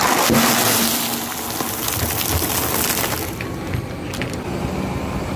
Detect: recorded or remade recorded